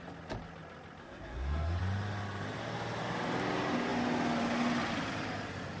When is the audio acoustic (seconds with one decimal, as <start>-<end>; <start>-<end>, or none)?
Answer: 0.0-1.0; 1.8-5.8